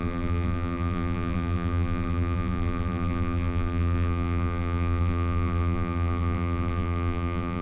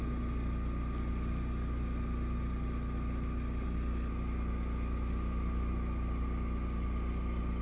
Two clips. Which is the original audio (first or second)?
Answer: second